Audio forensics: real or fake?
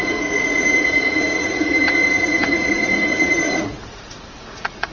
fake